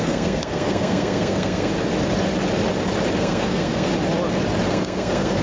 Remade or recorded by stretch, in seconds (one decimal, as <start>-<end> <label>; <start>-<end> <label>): 0.0-1.7 remade; 1.7-3.2 recorded; 3.2-3.9 remade; 3.9-4.7 recorded; 4.7-5.4 remade